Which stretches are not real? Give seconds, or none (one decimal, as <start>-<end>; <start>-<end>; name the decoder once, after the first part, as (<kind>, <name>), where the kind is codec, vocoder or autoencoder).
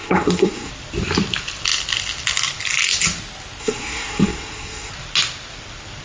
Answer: 0.0-0.7 (codec, SNAC); 3.6-4.9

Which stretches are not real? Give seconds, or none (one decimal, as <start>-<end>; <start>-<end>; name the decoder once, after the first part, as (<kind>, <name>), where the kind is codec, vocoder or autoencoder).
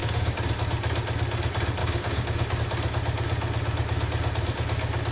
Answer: 0.0-0.5 (codec, DAC); 1.8-2.6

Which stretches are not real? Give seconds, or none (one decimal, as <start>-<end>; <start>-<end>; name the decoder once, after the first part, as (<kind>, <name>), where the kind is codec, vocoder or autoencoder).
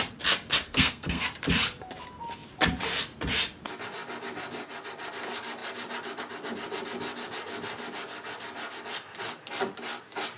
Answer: 0.6-1.2 (codec, SNAC)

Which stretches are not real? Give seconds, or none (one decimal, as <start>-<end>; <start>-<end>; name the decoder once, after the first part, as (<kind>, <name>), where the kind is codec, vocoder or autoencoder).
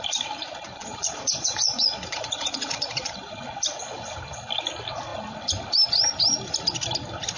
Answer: 0.8-3.3 (vocoder, Vocos)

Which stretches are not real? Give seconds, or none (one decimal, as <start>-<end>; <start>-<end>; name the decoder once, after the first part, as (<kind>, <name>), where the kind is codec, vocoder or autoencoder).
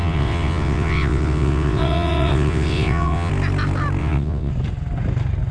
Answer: 0.0-3.3 (vocoder, WaveNeXt); 4.0-4.5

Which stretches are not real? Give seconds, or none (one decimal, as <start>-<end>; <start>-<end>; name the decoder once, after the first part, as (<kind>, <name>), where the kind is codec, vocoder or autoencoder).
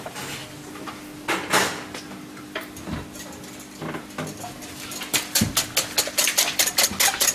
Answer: none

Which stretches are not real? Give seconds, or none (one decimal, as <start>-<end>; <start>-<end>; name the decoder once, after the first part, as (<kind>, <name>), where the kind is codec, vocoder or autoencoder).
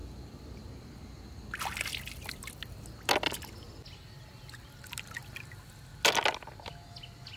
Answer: none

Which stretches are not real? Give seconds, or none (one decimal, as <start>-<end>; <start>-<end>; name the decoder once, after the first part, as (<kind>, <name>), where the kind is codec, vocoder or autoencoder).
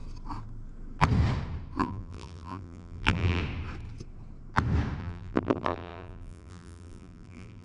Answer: 1.8-3.4 (vocoder, BigVGAN v2); 5.0-7.6